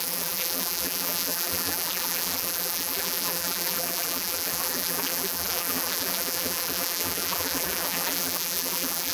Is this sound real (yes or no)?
no